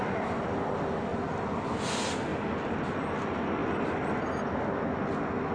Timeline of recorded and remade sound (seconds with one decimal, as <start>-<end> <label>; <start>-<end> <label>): 0.0-5.5 recorded